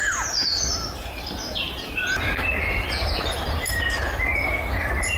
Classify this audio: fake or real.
fake